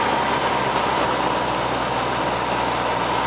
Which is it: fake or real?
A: real